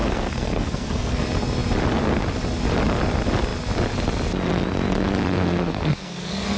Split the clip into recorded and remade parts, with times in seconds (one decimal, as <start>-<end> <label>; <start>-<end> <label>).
0.0-1.2 remade; 1.2-5.2 recorded; 5.2-6.6 remade